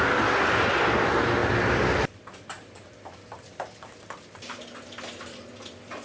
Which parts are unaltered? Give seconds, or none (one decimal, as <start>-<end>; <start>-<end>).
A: 0.0-6.0